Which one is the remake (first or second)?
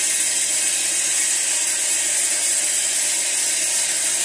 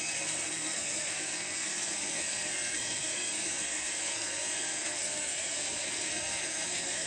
second